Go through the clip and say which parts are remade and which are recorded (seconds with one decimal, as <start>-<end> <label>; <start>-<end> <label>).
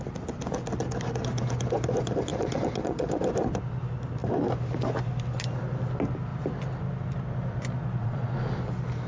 0.0-2.3 recorded; 2.3-3.2 remade; 3.2-8.0 recorded; 8.0-8.5 remade; 8.5-9.1 recorded